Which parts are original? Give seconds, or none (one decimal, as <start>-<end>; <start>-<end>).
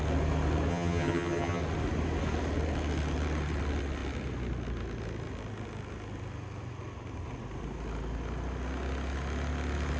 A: 0.0-0.7; 1.6-10.0